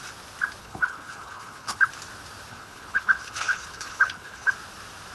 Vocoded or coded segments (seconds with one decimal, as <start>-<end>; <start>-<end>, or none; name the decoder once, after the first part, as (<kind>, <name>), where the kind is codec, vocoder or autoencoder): 0.6-1.9 (codec, HILCodec); 2.5-4.5